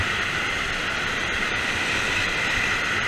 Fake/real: real